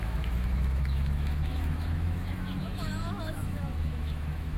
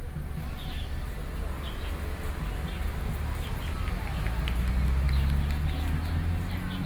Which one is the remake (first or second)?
first